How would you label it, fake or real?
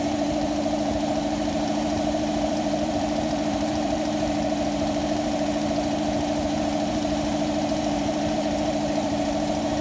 fake